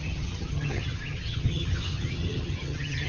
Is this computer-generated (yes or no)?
yes